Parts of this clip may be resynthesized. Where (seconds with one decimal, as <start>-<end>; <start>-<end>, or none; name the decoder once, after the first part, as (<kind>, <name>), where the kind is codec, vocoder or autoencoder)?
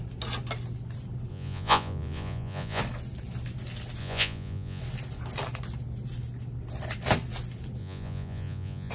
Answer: 1.3-2.8 (vocoder, Vocos); 4.0-4.8; 7.8-8.9